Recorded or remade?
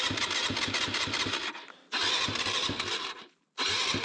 recorded